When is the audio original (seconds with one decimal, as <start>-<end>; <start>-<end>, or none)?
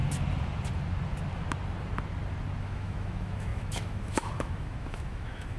0.0-2.6